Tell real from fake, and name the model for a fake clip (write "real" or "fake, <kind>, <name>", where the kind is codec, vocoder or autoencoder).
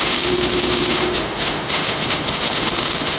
fake, autoencoder, DAC-VAE